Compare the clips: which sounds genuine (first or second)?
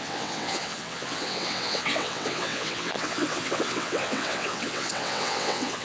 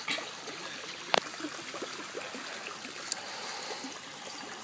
second